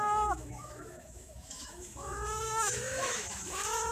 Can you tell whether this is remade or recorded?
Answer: remade